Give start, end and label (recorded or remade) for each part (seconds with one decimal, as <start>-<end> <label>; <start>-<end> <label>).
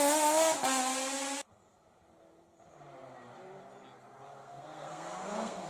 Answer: 0.0-4.4 recorded; 4.4-5.7 remade